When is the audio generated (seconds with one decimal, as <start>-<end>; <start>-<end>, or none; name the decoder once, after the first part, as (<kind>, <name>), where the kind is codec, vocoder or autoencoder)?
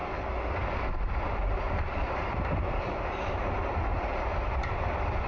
1.5-4.7 (vocoder, BigVGAN v2)